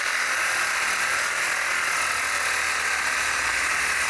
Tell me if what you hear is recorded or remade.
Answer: recorded